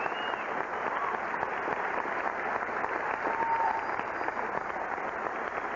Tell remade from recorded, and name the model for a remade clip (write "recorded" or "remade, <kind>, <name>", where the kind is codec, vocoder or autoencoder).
recorded